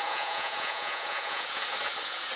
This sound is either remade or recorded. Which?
remade